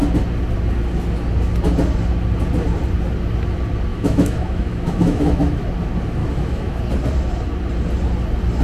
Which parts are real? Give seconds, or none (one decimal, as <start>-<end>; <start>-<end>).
0.0-3.9; 5.6-6.2; 6.8-8.6